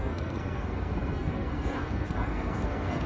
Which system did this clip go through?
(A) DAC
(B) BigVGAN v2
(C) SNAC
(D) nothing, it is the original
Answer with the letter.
C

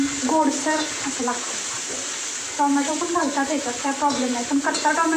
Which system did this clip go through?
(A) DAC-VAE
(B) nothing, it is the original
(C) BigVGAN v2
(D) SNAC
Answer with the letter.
C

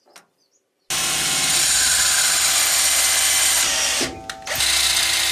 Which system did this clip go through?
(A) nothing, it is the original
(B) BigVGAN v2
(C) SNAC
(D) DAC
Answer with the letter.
A